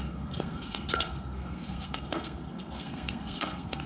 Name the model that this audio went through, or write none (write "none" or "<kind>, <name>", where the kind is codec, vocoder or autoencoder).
codec, SNAC